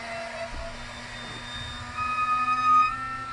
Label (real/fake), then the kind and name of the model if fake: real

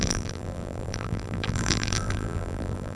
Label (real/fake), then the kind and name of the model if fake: fake, vocoder, BigVGAN v2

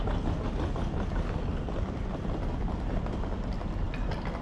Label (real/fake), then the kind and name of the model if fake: real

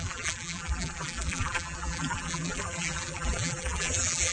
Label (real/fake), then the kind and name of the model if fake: fake, vocoder, BigVGAN v2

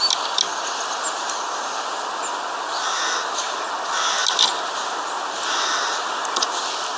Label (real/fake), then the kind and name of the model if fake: real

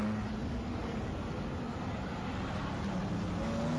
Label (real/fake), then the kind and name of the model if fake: real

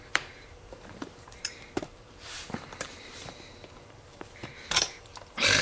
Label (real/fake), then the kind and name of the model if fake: fake, vocoder, BigVGAN v2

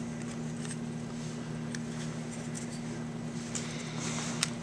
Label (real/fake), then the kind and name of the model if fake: real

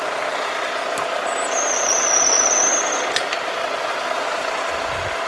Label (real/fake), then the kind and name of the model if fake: real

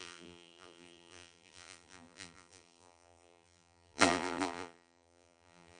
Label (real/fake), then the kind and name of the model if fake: fake, vocoder, BigVGAN v2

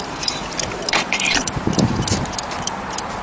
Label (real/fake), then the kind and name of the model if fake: fake, vocoder, BigVGAN v2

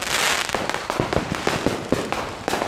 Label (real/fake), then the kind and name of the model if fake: fake, vocoder, BigVGAN v2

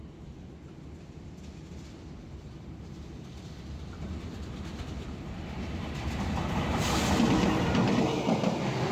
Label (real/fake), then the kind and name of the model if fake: real